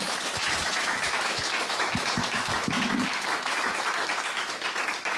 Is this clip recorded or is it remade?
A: remade